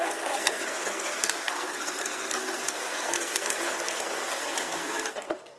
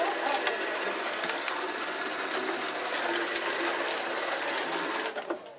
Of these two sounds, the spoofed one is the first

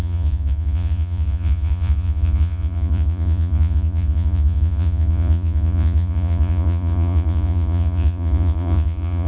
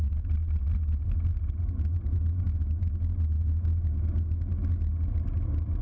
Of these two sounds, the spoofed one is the first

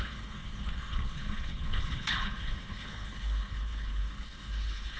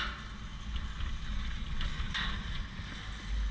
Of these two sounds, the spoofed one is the first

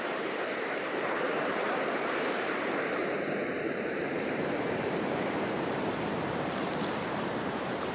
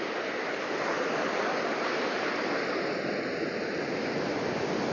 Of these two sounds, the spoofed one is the first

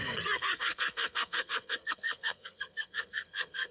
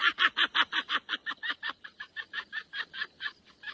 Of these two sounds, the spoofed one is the first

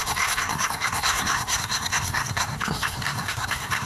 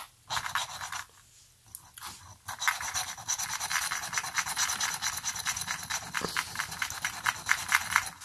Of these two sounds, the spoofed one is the first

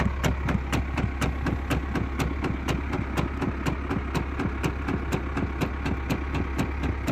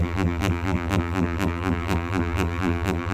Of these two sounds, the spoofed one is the second